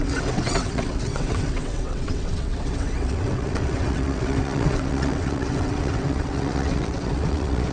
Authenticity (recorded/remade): remade